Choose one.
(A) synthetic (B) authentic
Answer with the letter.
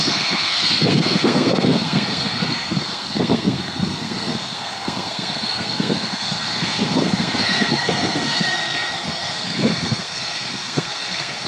A